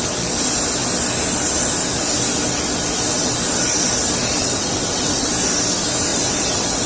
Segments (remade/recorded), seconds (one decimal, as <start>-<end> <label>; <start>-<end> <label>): 0.0-4.4 recorded; 4.4-5.3 remade; 5.3-6.1 recorded; 6.1-6.9 remade